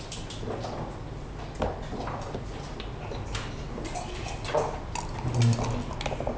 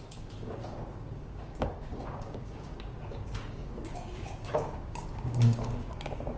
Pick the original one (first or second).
first